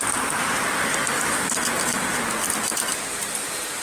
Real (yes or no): yes